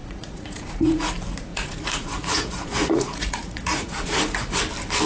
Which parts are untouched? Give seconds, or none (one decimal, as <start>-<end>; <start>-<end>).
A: 1.1-1.5; 4.6-5.1